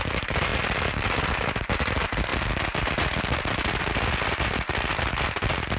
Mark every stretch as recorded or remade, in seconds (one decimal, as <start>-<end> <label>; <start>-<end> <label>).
0.0-5.8 recorded

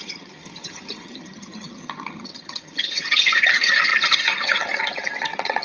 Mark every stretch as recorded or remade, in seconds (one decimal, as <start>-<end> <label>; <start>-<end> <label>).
0.0-5.6 remade

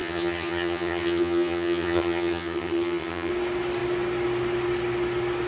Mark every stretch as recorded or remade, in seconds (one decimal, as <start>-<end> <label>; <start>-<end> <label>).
0.0-3.3 remade; 3.3-5.5 recorded

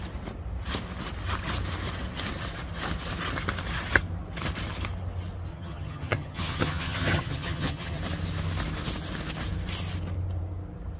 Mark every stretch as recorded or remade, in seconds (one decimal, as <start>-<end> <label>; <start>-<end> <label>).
0.0-5.5 recorded; 5.5-8.0 remade; 8.0-11.0 recorded